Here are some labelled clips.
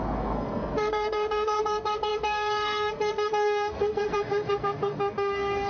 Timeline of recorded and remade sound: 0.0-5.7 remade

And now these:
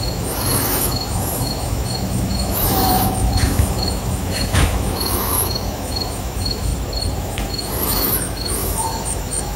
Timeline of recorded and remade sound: 0.0-6.7 remade; 6.7-7.2 recorded; 7.2-9.6 remade

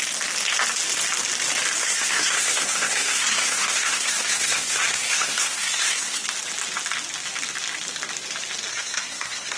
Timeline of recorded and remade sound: 0.0-1.8 recorded; 1.8-6.2 remade; 6.2-8.7 recorded; 8.7-9.6 remade

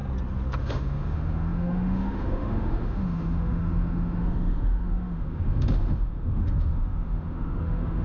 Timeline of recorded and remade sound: 0.0-0.6 recorded; 0.6-8.0 remade

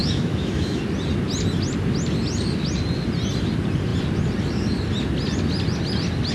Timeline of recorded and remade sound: 0.0-0.8 remade; 0.8-6.3 recorded

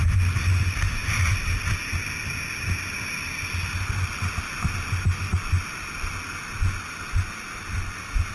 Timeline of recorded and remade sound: 0.0-8.3 recorded